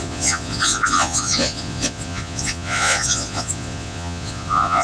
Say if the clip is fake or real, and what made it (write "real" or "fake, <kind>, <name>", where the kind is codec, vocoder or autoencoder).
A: fake, vocoder, Vocos